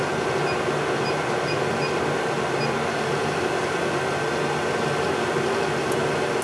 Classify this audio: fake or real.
real